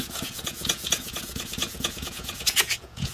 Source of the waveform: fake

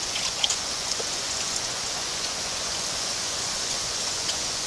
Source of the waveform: fake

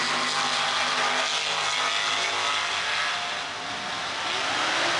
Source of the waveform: real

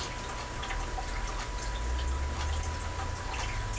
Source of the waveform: real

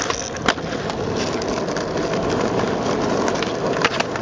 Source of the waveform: real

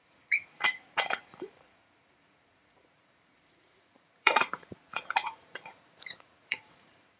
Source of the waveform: fake